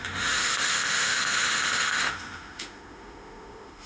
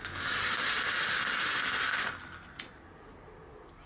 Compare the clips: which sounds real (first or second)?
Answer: second